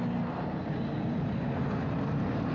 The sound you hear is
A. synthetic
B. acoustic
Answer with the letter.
B